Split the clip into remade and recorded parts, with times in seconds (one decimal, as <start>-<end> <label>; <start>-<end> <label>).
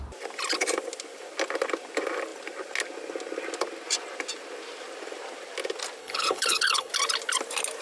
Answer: 0.0-6.0 recorded; 6.0-6.9 remade; 6.9-7.8 recorded